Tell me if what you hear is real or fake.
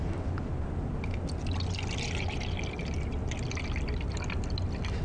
real